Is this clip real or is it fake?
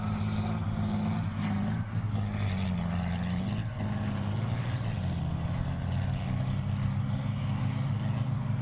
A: real